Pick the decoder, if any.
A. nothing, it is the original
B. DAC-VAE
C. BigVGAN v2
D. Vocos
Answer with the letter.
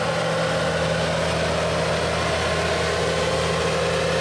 A